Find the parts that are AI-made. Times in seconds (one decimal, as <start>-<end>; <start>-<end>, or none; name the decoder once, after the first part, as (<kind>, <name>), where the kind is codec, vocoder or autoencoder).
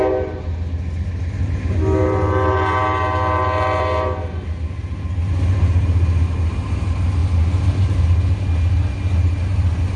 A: none